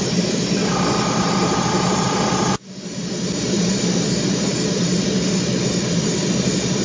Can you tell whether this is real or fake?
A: real